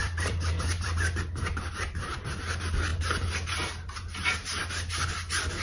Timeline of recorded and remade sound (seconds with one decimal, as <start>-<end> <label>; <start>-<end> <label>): 0.0-1.0 remade; 1.0-5.6 recorded